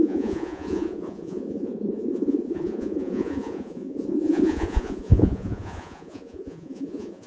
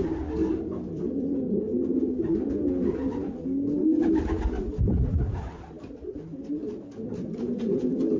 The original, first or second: second